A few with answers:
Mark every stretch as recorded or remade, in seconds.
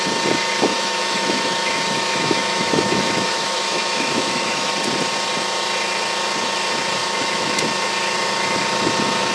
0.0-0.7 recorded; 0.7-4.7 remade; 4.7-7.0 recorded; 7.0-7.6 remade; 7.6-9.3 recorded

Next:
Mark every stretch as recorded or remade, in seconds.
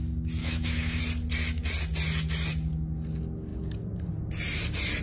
0.0-0.4 recorded; 0.4-1.0 remade; 1.0-5.0 recorded